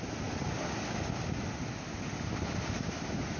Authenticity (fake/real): real